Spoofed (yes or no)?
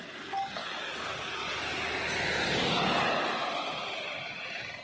no